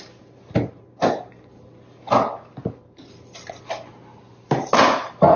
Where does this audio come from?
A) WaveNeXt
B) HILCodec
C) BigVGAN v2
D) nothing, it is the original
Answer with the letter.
D